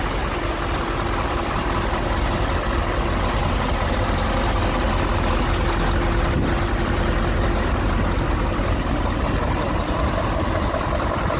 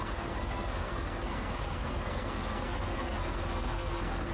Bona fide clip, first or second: first